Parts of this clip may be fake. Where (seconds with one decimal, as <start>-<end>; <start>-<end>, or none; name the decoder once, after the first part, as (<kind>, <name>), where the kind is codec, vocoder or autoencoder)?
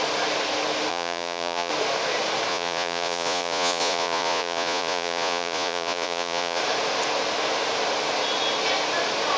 0.9-1.7 (vocoder, Vocos); 2.5-6.6